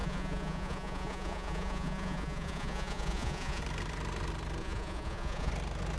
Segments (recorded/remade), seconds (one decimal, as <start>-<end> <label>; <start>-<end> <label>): 0.0-3.6 remade; 3.6-4.6 recorded; 4.6-5.5 remade; 5.5-6.0 recorded